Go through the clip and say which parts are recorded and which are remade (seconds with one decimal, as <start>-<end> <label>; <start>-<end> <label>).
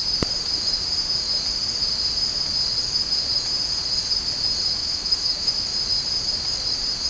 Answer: 0.0-4.8 recorded; 4.8-5.5 remade; 5.5-7.1 recorded